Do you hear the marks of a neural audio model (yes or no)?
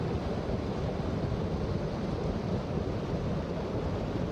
no